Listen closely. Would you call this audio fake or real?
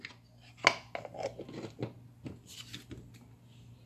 real